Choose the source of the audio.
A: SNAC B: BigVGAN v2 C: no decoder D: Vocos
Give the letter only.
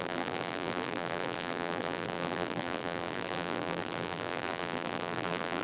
B